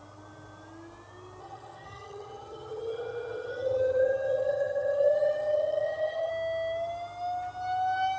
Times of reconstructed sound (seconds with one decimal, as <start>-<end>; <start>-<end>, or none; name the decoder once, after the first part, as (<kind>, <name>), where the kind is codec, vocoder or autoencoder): 1.4-6.3 (vocoder, HiFi-GAN)